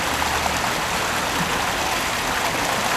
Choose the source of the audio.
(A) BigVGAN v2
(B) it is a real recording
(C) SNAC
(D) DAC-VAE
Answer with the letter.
B